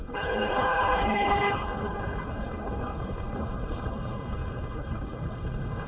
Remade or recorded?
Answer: remade